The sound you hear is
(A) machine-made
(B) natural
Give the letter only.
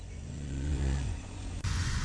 A